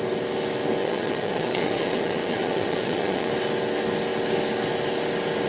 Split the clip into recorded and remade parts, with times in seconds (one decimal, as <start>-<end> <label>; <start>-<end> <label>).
0.0-0.8 recorded; 0.8-3.3 remade; 3.3-5.5 recorded